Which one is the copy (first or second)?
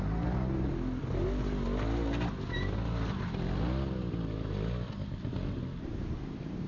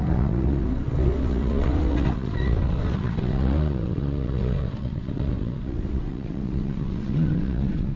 second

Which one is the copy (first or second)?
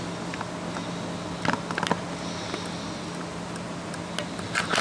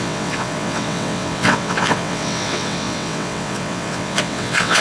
second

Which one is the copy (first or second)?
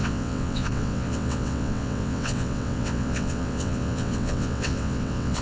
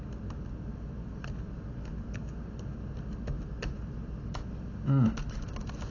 first